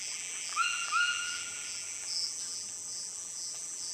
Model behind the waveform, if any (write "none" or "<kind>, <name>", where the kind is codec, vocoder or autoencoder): vocoder, BigVGAN v2